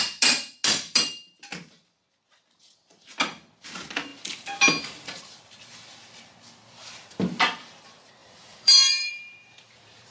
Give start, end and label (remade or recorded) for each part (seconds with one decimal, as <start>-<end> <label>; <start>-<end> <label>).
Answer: 0.0-8.2 recorded; 8.2-10.1 remade